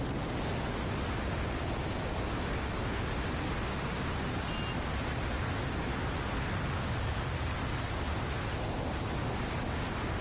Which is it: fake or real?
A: real